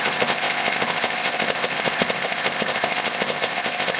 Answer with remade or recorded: remade